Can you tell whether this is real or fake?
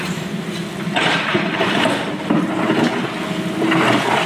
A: real